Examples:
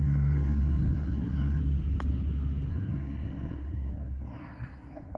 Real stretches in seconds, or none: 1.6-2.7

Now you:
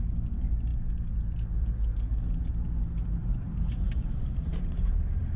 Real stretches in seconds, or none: 0.0-3.2

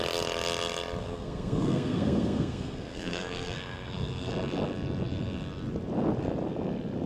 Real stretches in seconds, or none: 0.0-1.0; 4.3-7.1

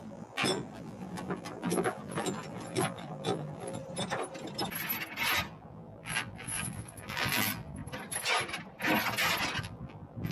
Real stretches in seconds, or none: 3.8-5.5; 7.8-9.6

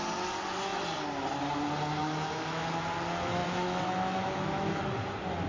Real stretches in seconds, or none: 0.0-2.0; 2.8-3.4; 4.8-5.5

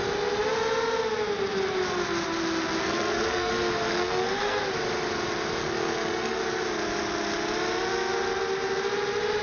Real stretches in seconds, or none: 0.0-2.8; 3.5-3.9; 4.6-5.6; 6.4-9.4